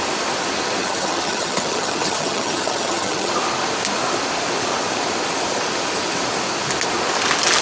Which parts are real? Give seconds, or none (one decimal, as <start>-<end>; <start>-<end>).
0.0-0.8; 3.3-7.6